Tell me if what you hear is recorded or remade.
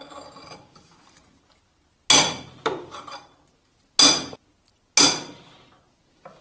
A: recorded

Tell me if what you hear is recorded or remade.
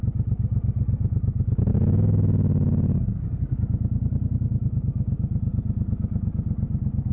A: recorded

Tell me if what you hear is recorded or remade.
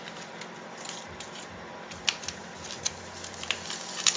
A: remade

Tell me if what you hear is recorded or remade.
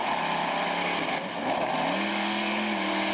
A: recorded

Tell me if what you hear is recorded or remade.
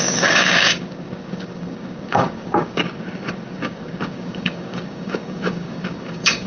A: remade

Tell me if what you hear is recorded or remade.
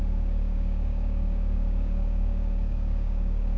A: remade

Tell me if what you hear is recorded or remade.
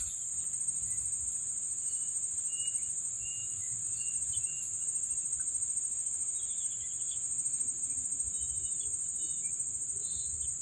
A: remade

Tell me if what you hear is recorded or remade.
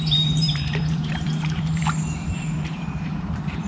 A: remade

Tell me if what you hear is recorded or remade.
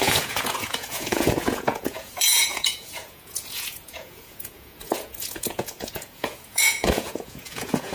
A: remade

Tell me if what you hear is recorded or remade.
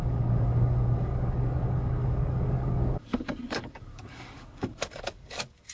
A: remade